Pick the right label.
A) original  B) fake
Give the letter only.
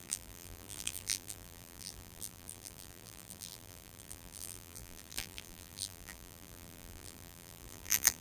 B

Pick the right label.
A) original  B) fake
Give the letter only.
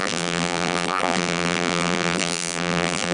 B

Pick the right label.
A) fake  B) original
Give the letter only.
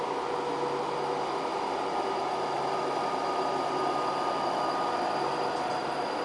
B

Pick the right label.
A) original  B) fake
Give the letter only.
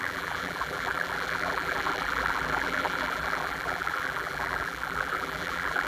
B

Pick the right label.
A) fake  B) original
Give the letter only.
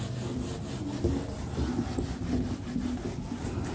B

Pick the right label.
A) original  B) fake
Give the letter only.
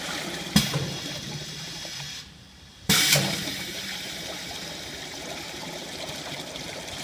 B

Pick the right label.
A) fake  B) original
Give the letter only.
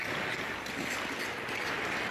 B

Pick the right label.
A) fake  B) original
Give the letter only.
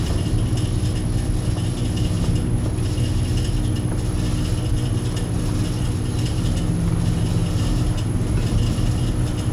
B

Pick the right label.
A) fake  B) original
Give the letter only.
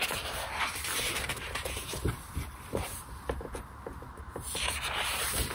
A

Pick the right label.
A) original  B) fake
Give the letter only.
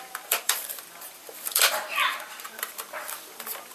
B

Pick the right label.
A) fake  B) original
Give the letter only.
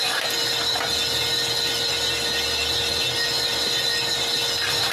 B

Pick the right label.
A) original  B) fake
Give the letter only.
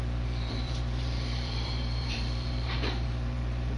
B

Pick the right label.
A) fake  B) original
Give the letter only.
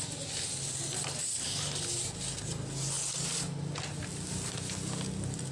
B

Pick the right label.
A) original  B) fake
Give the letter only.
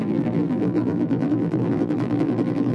B